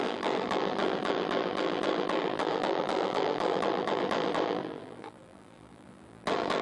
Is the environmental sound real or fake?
fake